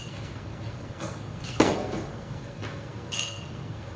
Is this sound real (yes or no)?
no